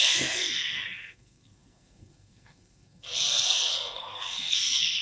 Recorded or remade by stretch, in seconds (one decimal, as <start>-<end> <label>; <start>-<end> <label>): 0.0-5.0 remade